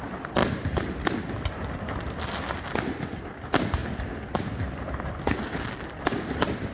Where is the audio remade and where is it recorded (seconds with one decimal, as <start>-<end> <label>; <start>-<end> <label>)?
0.0-6.7 recorded